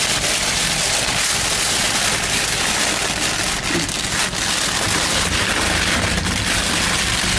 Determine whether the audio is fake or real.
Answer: real